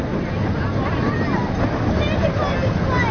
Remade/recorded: recorded